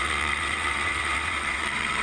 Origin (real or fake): fake